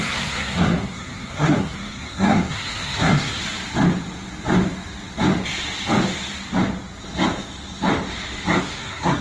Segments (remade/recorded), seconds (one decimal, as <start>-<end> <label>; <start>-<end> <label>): 0.0-3.4 remade; 3.4-8.6 recorded; 8.6-9.2 remade